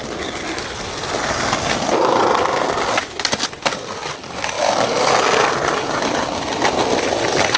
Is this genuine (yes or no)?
yes